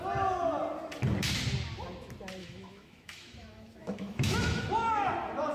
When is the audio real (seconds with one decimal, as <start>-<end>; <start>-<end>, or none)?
0.0-2.4; 4.6-5.5